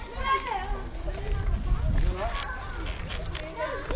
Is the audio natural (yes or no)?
yes